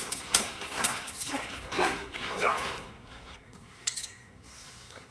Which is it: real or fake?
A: fake